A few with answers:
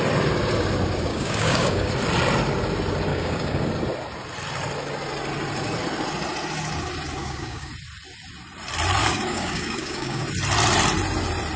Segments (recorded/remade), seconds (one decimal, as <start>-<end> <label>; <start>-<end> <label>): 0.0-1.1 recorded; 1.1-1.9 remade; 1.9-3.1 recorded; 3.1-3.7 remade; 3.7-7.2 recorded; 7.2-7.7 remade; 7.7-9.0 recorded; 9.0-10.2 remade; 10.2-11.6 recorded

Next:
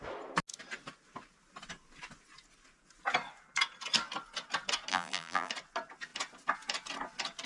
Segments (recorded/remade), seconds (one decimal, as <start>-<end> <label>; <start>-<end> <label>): 0.0-4.9 recorded; 4.9-5.5 remade; 5.5-7.5 recorded

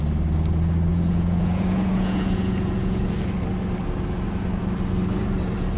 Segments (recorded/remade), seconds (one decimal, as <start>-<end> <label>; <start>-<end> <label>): 0.0-0.9 recorded; 0.9-3.1 remade; 3.1-5.8 recorded

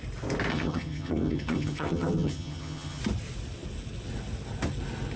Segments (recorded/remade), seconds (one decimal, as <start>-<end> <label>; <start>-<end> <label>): 0.0-0.5 recorded; 0.5-3.0 remade; 3.0-5.2 recorded

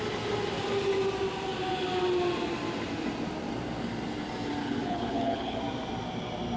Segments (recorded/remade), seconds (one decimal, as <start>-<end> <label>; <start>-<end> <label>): 0.0-4.6 recorded; 4.6-5.6 remade; 5.6-6.6 recorded

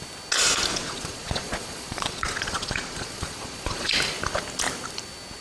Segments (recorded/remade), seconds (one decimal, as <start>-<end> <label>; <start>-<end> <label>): 0.0-0.7 recorded; 0.7-3.9 remade; 3.9-5.4 recorded